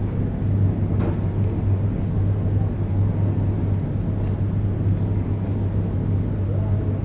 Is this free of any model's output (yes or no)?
yes